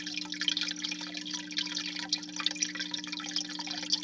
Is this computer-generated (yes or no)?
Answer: no